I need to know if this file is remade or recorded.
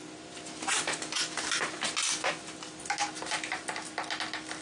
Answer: recorded